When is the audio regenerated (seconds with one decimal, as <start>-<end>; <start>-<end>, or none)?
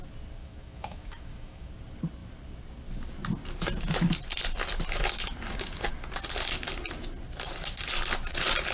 0.4-1.7